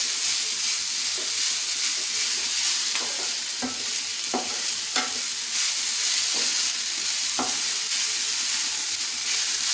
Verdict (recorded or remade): recorded